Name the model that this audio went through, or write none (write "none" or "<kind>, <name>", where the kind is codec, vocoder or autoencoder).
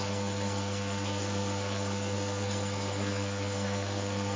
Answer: codec, SNAC